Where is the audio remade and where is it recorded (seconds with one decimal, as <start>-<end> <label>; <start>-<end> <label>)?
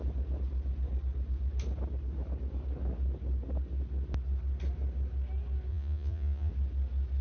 0.0-5.7 recorded; 5.7-6.5 remade; 6.5-7.2 recorded